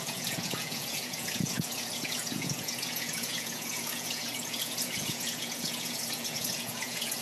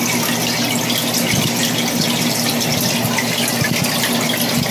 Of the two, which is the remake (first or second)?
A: first